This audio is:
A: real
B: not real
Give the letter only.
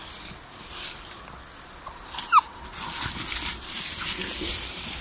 A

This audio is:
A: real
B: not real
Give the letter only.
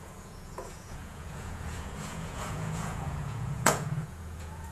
B